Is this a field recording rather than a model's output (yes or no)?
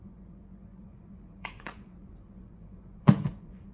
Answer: no